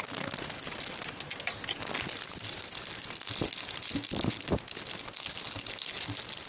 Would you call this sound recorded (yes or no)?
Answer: yes